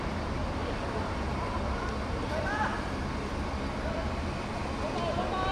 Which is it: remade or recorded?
recorded